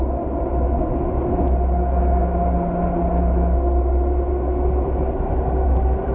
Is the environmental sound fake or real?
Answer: real